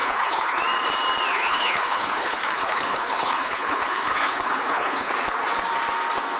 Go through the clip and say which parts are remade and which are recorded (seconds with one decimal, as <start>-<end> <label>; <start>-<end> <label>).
0.0-0.6 remade; 0.6-1.3 recorded; 1.3-5.1 remade; 5.1-6.4 recorded